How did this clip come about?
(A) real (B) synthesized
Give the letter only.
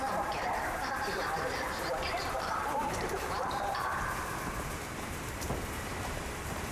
B